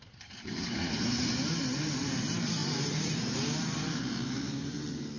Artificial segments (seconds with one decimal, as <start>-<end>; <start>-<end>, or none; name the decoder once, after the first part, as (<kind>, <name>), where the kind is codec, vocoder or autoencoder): 0.0-5.2 (vocoder, BigVGAN v2)